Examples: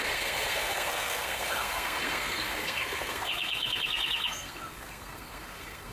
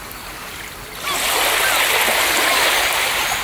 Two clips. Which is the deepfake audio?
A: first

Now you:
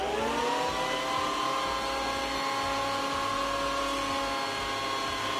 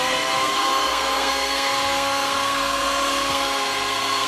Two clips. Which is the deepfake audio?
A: second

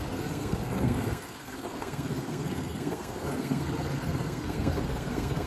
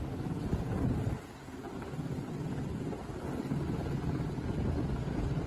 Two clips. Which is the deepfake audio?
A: first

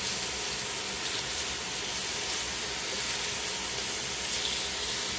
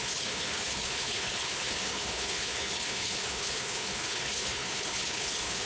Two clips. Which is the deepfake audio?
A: second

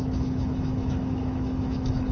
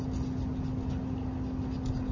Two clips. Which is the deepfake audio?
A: first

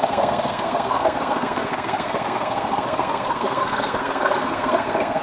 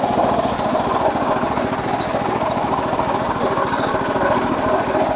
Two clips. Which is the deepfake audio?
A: first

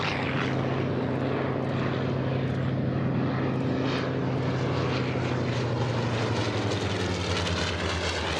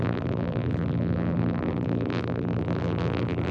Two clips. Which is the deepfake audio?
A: second